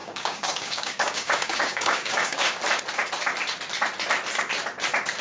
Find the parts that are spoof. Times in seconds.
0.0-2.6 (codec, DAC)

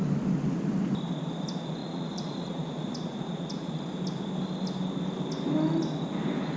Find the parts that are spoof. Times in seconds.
1.8-3.8 (vocoder, Vocos)

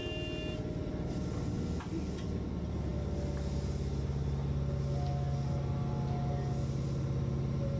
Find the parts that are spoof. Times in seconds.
none

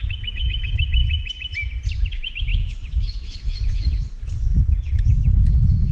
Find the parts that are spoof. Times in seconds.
0.0-1.0 (autoencoder, DAC-VAE); 2.1-5.9

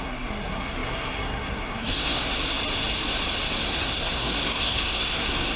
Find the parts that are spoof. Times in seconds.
0.0-2.3 (codec, SNAC); 3.6-5.6

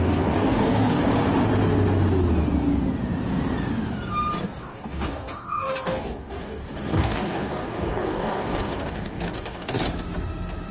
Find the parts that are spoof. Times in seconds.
0.0-1.1 (codec, DAC); 4.4-9.8

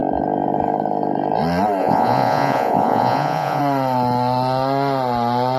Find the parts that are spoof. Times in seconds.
1.8-3.6 (vocoder, Vocos)

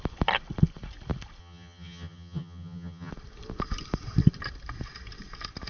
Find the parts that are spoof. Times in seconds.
1.4-3.1 (vocoder, HiFi-GAN)